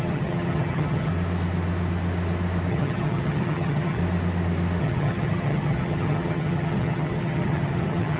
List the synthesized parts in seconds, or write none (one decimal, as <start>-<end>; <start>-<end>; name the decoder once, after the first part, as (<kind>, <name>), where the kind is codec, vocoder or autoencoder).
0.0-1.1 (vocoder, HiFi-GAN); 2.7-4.0; 4.8-8.2